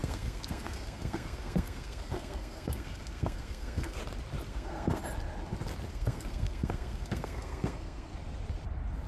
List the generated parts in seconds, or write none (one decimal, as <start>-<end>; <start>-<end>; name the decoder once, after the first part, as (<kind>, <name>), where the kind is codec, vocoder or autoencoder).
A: 0.0-4.0 (codec, SNAC); 4.5-5.0; 5.9-8.1